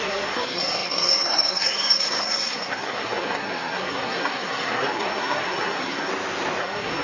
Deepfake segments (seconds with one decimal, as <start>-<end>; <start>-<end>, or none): 0.0-6.1; 6.6-7.0